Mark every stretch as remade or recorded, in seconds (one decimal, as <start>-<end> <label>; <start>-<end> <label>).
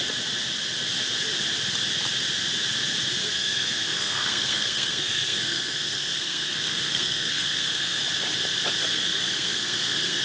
0.0-3.2 recorded; 3.2-8.0 remade; 8.0-8.8 recorded; 8.8-10.2 remade